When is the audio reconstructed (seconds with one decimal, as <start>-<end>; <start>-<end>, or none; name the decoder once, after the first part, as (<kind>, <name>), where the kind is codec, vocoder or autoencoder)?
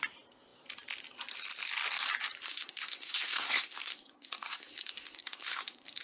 2.4-6.0 (codec, SNAC)